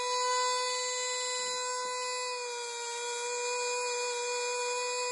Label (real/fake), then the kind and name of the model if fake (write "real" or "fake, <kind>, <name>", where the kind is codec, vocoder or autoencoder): real